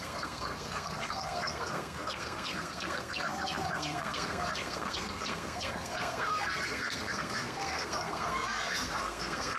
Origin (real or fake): fake